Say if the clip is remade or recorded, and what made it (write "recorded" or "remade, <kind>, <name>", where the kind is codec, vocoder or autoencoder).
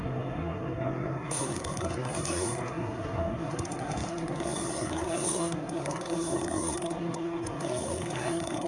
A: remade, codec, SNAC